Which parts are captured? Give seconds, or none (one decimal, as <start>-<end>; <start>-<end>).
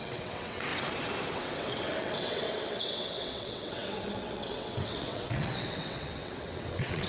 0.7-1.3